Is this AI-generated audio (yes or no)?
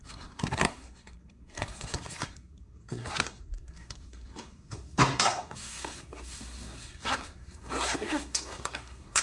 yes